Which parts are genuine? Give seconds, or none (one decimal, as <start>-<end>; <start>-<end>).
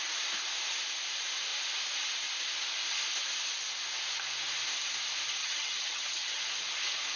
0.0-5.4; 6.4-7.2